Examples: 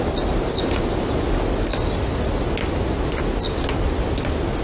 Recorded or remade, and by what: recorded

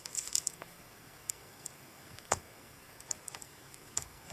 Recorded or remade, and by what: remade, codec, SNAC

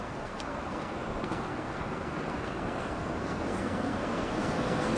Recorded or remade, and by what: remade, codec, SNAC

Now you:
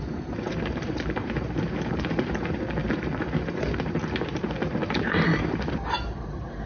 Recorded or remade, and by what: remade, vocoder, BigVGAN v2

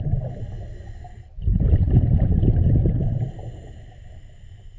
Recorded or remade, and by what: recorded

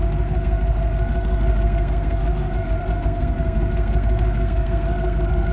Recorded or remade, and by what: remade, codec, SNAC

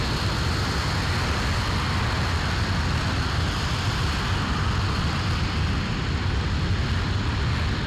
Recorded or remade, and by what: recorded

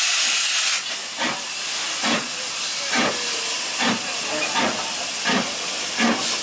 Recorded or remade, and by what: recorded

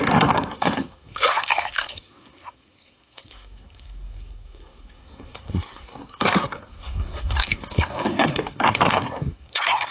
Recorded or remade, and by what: remade, codec, SNAC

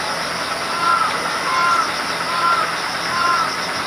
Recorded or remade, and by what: recorded